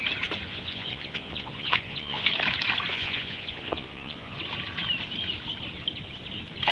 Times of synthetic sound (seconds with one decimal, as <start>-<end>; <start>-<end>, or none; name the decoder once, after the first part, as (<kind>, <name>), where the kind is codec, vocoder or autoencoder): 0.5-2.3 (vocoder, Vocos); 2.9-4.4